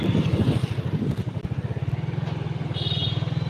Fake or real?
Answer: real